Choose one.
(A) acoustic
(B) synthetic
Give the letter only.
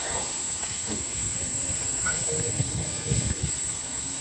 B